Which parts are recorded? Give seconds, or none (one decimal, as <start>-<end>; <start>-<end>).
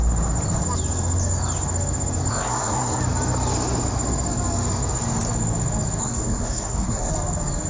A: 0.0-2.3; 3.0-6.0; 7.1-7.7